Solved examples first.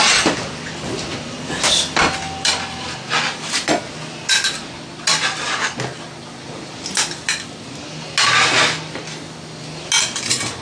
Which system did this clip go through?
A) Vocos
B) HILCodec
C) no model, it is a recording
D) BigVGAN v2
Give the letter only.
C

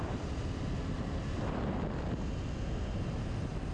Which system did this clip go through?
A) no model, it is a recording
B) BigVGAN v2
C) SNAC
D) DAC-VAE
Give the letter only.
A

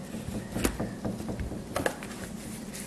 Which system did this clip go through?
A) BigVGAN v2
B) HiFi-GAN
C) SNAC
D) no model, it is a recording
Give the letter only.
D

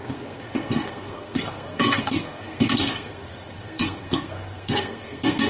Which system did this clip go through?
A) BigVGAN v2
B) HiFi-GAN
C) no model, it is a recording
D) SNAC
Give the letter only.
D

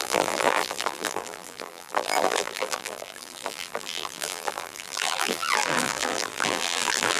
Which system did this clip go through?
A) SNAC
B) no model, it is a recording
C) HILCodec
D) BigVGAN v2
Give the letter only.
D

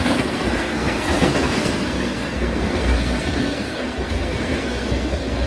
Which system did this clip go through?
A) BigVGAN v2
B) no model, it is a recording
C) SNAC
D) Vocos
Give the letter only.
C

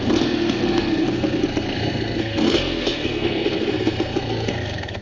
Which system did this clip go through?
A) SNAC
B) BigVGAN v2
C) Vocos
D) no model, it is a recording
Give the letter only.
A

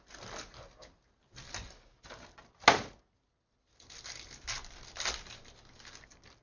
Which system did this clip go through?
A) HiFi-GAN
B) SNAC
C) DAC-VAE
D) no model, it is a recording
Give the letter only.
D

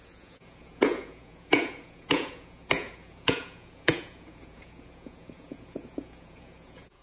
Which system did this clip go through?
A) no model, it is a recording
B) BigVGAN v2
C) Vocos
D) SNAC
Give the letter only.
C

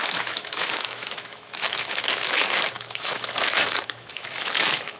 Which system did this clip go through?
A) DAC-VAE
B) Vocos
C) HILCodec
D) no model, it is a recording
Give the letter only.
A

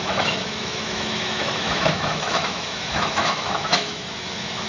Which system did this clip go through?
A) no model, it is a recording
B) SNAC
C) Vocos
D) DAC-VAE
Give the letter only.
D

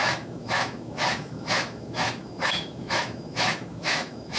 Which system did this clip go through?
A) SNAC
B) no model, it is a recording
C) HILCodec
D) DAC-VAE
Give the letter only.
D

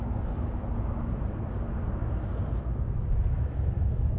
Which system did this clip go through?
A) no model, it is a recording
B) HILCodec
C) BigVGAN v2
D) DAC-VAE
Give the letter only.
A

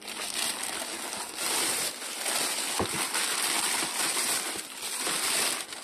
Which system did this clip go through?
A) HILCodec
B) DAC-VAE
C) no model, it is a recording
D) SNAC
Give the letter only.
C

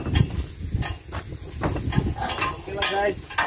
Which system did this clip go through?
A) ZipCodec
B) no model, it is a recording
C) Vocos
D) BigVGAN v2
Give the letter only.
B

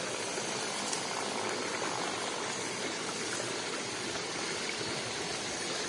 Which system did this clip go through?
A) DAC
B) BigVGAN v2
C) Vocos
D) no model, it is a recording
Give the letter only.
D